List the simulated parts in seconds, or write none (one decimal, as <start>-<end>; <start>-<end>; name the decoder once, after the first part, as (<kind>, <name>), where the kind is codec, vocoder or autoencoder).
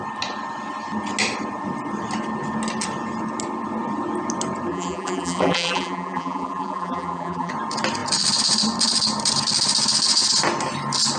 4.7-7.5 (vocoder, BigVGAN v2)